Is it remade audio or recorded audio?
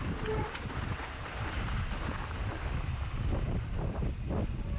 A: recorded